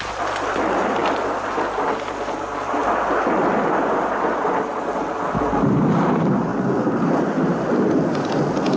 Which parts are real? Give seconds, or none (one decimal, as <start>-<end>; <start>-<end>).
0.0-8.8